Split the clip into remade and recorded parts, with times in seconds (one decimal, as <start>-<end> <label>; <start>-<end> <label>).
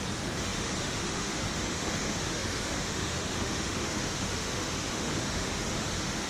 0.0-6.3 remade